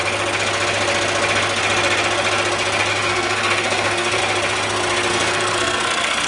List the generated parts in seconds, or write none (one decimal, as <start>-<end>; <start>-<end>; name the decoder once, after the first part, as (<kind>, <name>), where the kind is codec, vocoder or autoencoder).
2.9-4.2 (codec, SNAC); 5.1-6.3